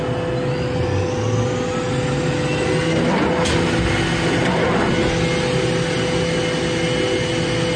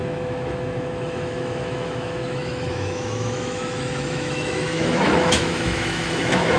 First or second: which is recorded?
first